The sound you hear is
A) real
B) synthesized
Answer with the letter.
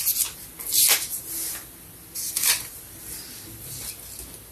A